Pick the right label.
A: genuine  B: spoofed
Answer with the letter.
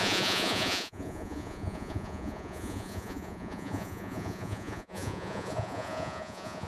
B